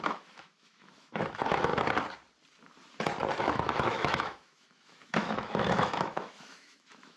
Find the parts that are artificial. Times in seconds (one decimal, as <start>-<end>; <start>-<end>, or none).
0.0-1.7; 3.4-7.2